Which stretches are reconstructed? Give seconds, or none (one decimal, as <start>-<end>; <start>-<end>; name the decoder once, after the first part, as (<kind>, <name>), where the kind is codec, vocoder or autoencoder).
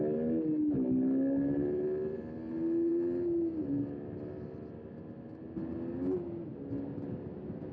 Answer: none